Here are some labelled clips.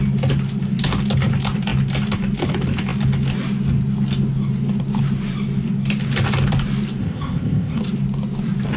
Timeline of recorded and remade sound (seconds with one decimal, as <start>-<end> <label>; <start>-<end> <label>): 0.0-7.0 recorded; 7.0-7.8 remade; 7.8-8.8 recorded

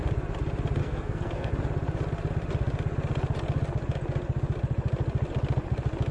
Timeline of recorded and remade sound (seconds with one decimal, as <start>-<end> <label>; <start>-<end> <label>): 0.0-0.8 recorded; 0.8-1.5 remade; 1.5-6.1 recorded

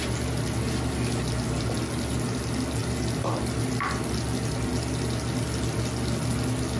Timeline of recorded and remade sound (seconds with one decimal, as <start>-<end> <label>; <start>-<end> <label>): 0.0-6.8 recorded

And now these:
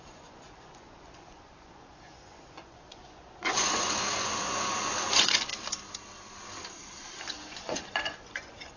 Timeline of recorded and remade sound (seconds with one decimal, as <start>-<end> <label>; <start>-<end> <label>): 0.0-5.5 remade; 5.5-7.3 recorded; 7.3-8.8 remade

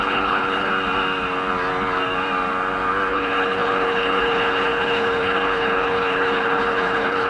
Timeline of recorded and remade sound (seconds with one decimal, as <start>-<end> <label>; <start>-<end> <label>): 0.0-0.7 remade; 0.7-3.1 recorded; 3.1-7.3 remade